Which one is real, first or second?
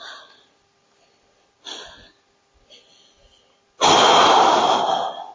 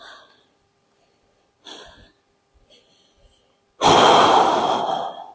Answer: first